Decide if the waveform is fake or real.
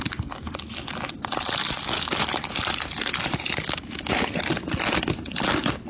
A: real